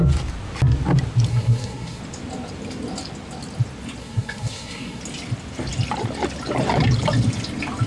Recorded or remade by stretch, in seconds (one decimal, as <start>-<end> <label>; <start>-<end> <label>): 0.0-1.3 recorded; 1.3-2.0 remade; 2.0-4.0 recorded; 4.0-5.0 remade; 5.0-7.9 recorded

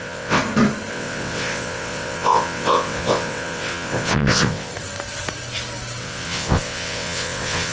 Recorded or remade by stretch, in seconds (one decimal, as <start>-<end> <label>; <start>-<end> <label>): 0.0-0.4 remade; 0.4-0.9 recorded; 0.9-4.7 remade; 4.7-6.0 recorded; 6.0-7.7 remade

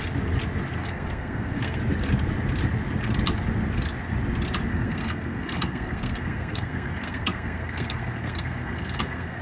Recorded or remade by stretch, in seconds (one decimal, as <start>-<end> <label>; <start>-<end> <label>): 0.0-0.8 recorded; 0.8-1.8 remade; 1.8-4.7 recorded; 4.7-9.4 remade